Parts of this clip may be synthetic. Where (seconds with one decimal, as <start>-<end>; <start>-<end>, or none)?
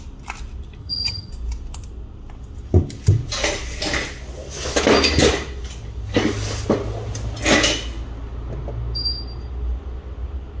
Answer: 0.8-1.3